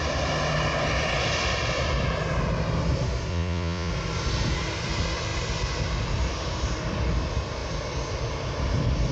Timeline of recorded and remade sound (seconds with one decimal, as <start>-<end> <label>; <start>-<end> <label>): 0.0-3.3 recorded; 3.3-3.9 remade; 3.9-9.1 recorded